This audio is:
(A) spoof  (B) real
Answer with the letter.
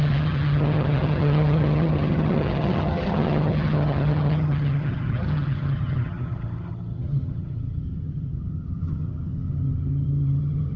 A